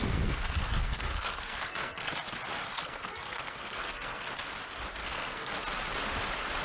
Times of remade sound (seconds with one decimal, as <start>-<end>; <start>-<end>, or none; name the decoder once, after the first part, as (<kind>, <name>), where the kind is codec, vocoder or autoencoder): 0.0-2.1 (codec, SNAC); 2.6-4.3; 5.0-5.5